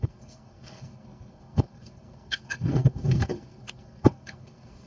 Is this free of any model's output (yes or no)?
no